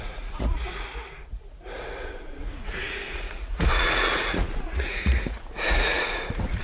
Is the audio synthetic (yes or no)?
yes